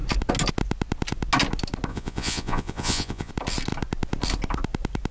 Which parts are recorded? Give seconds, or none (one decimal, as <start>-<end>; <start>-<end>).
0.0-1.9; 3.3-5.1

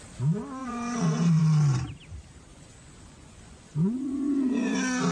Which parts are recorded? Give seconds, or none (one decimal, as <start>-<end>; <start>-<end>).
0.0-0.6; 1.4-2.5; 4.5-5.1

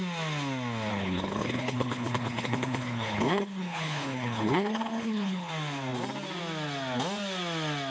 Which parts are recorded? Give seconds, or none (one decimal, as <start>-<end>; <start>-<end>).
0.0-0.9; 5.5-7.9

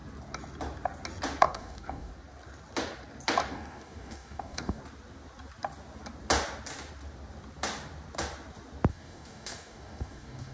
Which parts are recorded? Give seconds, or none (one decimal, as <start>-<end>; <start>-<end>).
0.0-1.4; 2.1-3.5; 4.8-8.9

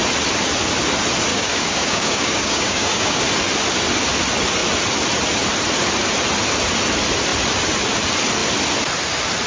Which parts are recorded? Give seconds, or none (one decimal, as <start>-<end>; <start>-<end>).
0.0-1.3; 3.2-9.5